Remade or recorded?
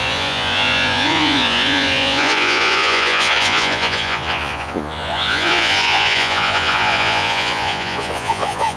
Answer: remade